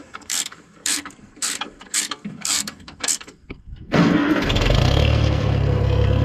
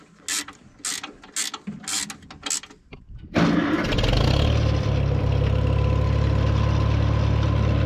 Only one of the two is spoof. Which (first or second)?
first